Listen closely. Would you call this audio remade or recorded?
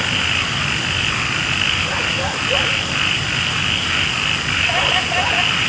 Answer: recorded